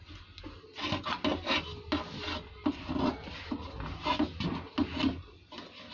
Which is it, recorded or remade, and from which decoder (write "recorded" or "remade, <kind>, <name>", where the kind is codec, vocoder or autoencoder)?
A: recorded